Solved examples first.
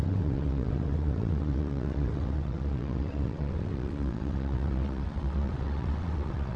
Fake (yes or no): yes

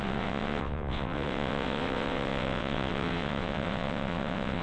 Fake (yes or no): yes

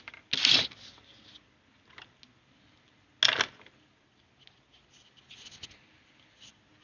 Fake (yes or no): no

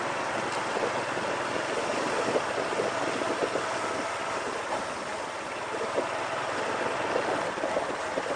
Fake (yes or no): no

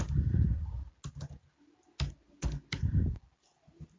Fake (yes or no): no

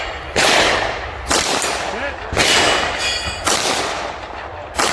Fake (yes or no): no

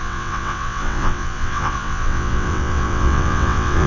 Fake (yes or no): yes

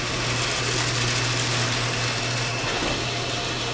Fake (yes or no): no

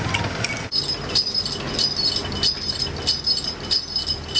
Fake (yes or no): no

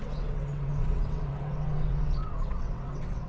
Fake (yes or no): yes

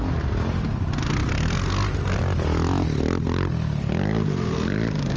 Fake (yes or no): no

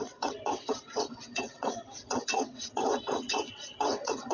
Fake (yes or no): yes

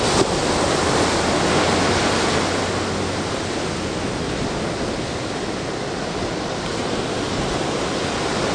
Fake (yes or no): no